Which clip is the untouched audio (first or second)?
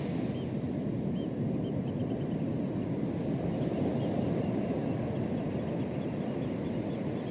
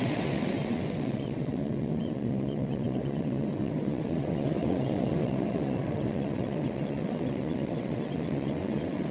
first